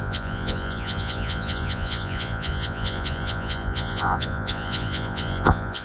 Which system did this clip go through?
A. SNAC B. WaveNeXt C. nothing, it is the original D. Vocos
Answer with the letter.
D